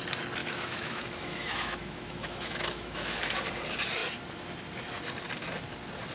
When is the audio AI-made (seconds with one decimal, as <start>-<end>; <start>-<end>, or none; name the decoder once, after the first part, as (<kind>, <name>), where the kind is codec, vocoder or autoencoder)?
0.4-3.4 (autoencoder, DAC-VAE)